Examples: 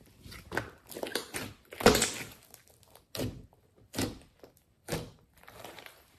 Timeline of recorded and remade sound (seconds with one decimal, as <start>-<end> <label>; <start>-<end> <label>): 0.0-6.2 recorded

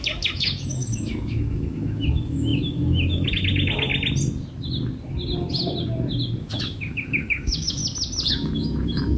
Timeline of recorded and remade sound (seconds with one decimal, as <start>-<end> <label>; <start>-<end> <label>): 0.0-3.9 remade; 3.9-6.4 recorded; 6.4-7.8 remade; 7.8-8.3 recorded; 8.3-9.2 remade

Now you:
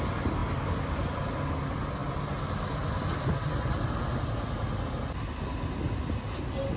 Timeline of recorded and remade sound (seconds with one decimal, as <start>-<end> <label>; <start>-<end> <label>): 0.0-6.8 recorded

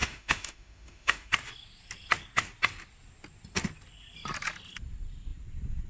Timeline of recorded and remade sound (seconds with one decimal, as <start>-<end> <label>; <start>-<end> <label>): 0.0-1.3 remade; 1.3-5.9 recorded